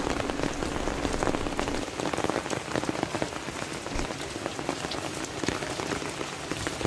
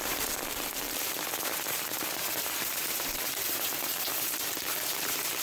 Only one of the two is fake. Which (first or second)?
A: second